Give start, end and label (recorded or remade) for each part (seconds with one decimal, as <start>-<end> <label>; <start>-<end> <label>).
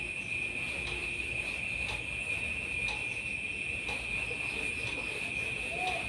0.0-6.1 recorded